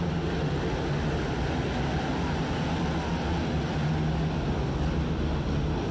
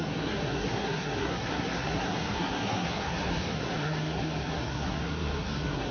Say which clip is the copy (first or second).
second